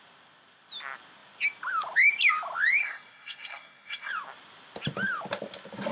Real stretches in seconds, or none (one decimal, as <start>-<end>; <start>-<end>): 0.0-2.8; 4.1-5.9